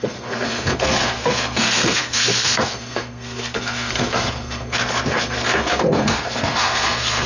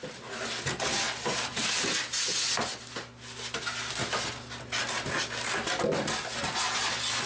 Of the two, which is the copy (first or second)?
first